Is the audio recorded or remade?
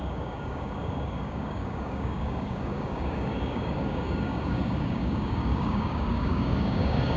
remade